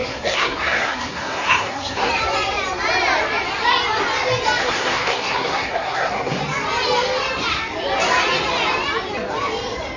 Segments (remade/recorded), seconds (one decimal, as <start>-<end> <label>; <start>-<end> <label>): 0.0-2.1 remade; 2.1-4.6 recorded; 4.6-6.4 remade; 6.4-10.0 recorded